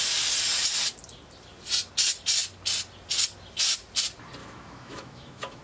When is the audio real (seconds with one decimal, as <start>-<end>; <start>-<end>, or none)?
0.0-4.4